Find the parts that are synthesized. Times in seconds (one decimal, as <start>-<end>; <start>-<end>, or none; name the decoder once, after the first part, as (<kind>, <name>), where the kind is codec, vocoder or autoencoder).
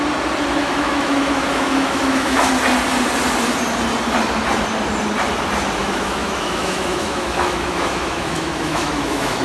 0.6-2.5 (autoencoder, DAC-VAE); 5.8-9.4